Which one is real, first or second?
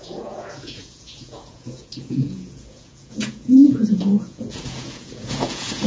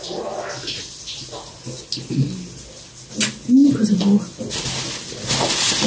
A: second